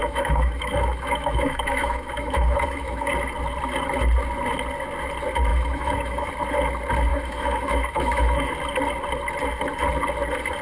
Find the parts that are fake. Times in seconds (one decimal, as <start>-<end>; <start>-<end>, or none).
0.0-3.1; 5.5-6.3; 7.1-8.5